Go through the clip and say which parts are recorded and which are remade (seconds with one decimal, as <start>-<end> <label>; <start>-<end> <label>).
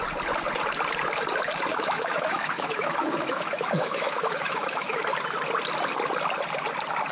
0.0-1.7 recorded; 1.7-5.0 remade; 5.0-7.1 recorded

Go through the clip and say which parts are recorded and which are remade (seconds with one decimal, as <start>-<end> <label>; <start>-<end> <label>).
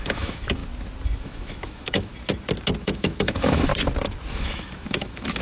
0.0-0.6 remade; 0.6-1.2 recorded; 1.2-2.1 remade; 2.1-2.8 recorded; 2.8-3.7 remade; 3.7-4.3 recorded; 4.3-5.4 remade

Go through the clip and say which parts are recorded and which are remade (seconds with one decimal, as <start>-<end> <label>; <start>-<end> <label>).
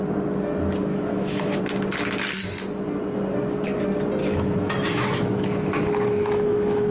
0.0-0.9 recorded; 0.9-1.6 remade; 1.6-4.2 recorded; 4.2-6.9 remade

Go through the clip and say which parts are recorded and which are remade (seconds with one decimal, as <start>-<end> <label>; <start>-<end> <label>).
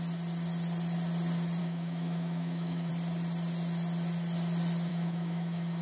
0.0-1.6 recorded; 1.6-2.9 remade; 2.9-4.9 recorded; 4.9-5.8 remade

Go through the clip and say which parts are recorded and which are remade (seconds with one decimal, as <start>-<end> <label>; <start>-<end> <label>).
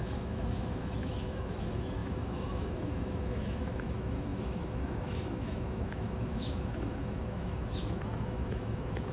0.0-9.1 remade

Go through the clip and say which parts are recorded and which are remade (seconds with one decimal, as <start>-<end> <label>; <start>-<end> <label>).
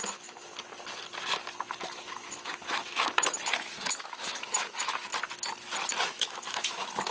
0.0-0.5 remade; 0.5-2.0 recorded; 2.0-5.1 remade; 5.1-6.0 recorded; 6.0-7.1 remade